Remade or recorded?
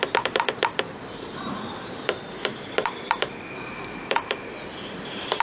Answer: remade